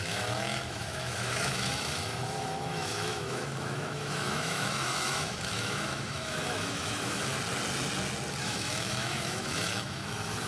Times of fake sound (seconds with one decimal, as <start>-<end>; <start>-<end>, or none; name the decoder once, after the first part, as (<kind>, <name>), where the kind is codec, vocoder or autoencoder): 0.0-7.3 (autoencoder, DAC-VAE); 8.4-10.5